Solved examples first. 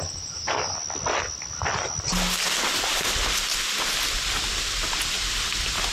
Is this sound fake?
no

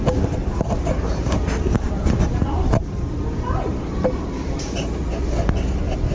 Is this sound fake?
no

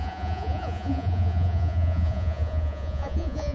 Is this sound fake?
yes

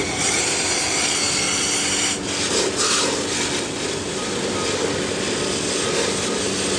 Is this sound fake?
no